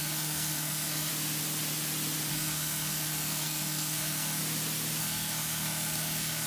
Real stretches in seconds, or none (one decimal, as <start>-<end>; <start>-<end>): 1.1-2.3; 4.4-5.0